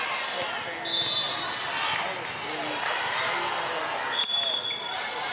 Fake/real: real